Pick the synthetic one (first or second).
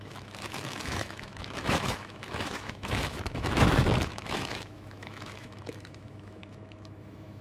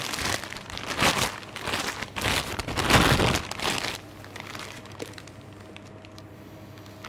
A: first